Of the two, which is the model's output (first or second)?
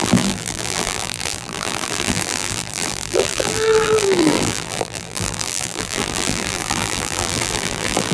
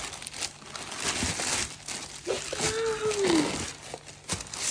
first